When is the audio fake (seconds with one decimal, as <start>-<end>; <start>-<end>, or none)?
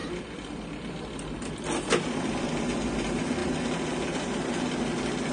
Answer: none